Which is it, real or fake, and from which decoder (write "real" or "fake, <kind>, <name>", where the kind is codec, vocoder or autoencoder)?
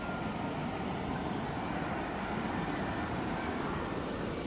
real